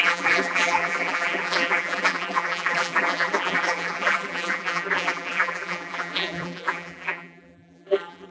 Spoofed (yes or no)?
yes